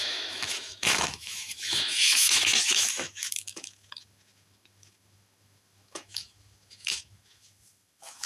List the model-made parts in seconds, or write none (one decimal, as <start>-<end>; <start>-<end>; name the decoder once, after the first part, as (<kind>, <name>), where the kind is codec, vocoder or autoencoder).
0.0-8.3 (autoencoder, DAC-VAE)